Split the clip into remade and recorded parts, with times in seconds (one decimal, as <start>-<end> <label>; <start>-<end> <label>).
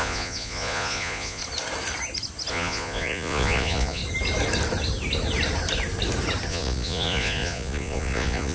0.0-1.4 remade; 1.4-2.5 recorded; 2.5-4.0 remade; 4.0-6.5 recorded; 6.5-8.5 remade